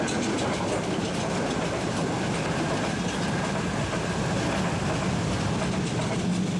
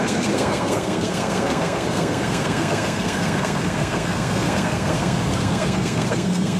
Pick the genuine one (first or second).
first